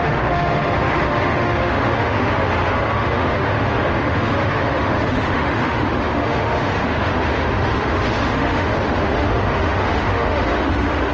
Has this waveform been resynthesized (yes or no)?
yes